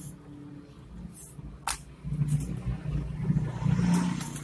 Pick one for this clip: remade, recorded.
recorded